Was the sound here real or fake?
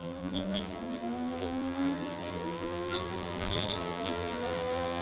fake